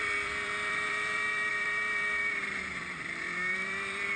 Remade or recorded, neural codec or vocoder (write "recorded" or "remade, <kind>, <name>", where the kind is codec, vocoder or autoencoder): remade, vocoder, BigVGAN v2